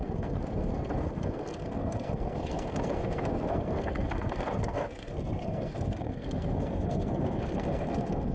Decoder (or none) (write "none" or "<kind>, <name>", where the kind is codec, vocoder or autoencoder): codec, SNAC